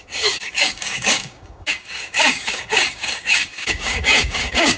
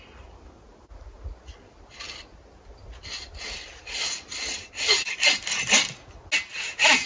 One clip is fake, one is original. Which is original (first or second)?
second